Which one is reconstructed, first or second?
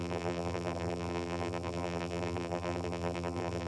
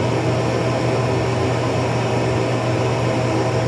first